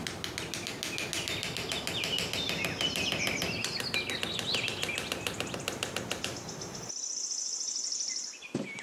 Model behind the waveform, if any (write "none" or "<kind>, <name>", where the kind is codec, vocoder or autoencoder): none